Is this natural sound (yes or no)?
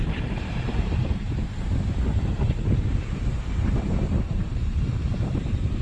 no